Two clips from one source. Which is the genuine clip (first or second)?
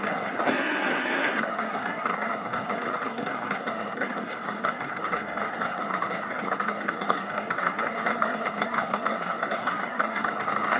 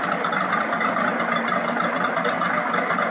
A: second